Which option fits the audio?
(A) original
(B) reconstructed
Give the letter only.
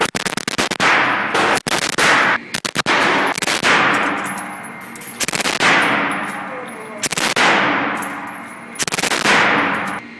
A